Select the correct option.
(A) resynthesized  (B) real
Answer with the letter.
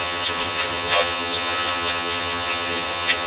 A